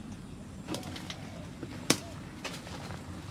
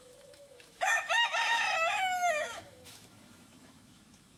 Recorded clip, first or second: first